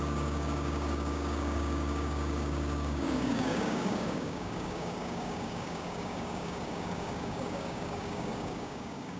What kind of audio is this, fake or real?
fake